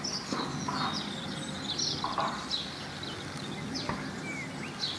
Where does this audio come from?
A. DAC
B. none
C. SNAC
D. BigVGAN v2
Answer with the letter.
B